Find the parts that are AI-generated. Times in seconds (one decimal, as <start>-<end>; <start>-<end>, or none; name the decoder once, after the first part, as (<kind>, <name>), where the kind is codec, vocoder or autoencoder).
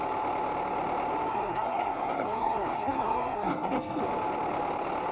1.3-4.0 (codec, SNAC)